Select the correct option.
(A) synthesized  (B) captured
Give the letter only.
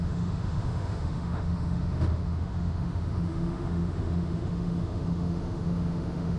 A